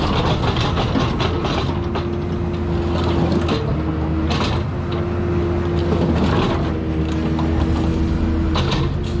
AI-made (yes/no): no